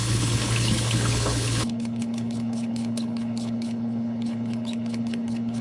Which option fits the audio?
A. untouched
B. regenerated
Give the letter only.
B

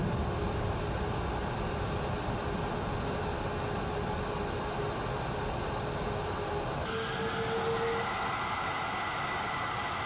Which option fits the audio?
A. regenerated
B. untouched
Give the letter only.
B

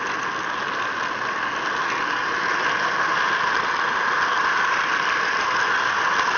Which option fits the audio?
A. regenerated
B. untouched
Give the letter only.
B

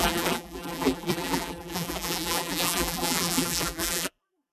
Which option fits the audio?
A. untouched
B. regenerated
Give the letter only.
B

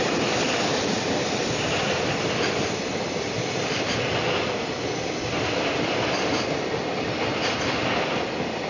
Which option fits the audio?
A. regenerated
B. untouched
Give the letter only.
B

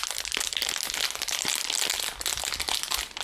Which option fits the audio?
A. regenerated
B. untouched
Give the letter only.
A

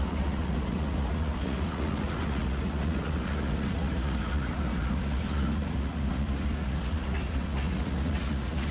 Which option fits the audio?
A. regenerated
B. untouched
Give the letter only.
A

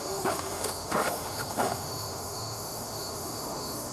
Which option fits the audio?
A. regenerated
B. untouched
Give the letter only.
A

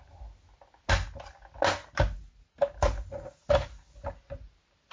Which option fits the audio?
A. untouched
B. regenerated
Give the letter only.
A